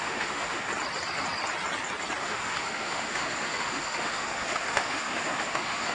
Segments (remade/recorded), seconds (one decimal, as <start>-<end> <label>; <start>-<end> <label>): 0.0-0.7 remade; 0.7-2.2 recorded; 2.2-5.9 remade